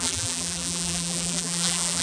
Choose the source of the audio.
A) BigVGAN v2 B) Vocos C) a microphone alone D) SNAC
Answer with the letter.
A